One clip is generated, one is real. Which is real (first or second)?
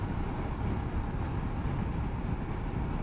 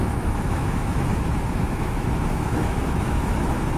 first